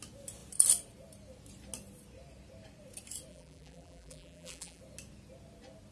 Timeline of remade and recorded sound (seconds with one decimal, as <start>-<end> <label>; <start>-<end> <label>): 0.0-3.3 recorded; 3.3-4.8 remade; 4.8-5.9 recorded